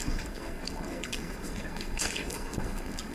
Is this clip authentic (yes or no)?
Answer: no